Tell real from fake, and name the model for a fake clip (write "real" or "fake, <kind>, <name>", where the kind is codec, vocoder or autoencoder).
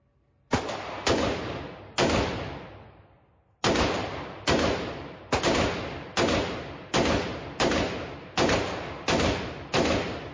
real